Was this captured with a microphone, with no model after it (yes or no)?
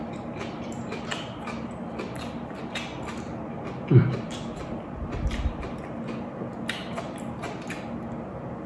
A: yes